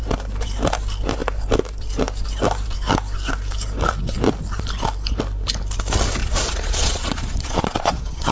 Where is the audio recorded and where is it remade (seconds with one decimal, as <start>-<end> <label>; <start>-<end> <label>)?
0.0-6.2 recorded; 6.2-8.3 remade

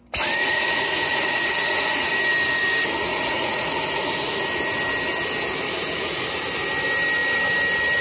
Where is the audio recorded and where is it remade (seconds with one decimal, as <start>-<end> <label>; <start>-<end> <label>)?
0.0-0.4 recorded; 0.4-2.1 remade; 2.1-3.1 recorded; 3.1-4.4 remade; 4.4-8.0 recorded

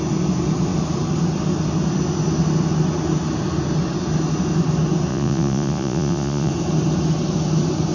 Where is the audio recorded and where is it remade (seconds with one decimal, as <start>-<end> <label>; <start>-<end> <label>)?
0.0-5.1 recorded; 5.1-6.5 remade; 6.5-7.9 recorded

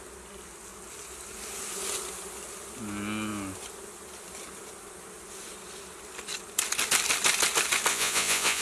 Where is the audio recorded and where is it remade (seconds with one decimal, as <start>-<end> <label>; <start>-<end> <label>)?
0.0-7.9 recorded; 7.9-8.6 remade